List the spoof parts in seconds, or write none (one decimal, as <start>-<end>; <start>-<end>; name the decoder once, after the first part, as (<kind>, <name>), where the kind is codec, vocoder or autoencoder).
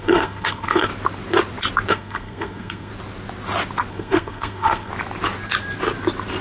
0.0-0.9 (codec, SNAC); 1.9-2.9; 3.9-4.9